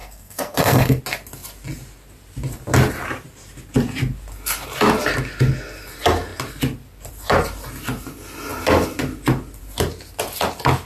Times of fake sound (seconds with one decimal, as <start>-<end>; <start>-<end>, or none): 0.0-1.0